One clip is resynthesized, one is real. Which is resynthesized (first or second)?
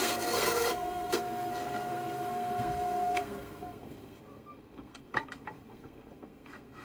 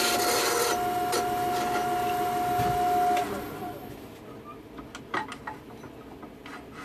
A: first